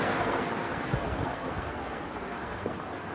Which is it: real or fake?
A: fake